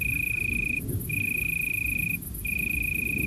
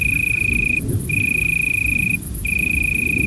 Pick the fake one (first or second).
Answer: second